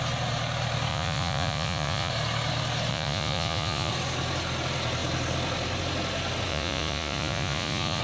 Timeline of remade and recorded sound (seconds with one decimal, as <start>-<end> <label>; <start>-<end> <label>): 0.0-0.9 recorded; 0.9-2.1 remade; 2.1-2.9 recorded; 2.9-3.9 remade; 3.9-6.5 recorded; 6.5-8.0 remade